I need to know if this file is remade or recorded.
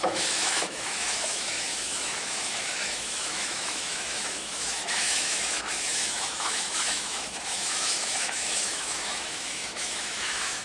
remade